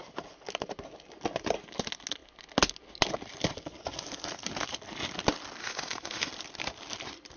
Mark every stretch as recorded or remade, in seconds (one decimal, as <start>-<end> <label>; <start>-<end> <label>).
0.0-5.6 recorded; 5.6-6.3 remade; 6.3-7.4 recorded